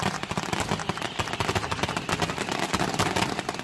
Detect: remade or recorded recorded